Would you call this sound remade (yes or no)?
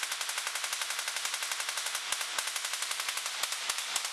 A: no